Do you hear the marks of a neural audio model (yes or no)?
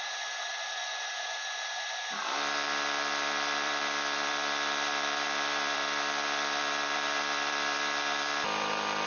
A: yes